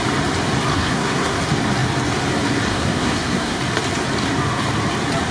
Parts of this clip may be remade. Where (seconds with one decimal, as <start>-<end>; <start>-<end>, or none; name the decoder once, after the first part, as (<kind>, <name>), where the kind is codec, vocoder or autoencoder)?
0.7-1.4 (codec, SNAC); 2.7-3.6